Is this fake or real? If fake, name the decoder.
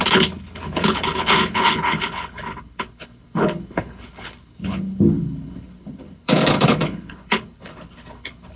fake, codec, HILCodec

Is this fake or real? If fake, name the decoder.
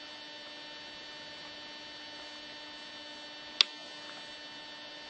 real